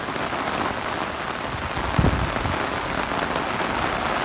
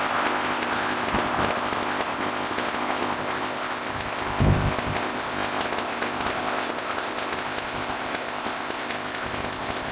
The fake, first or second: second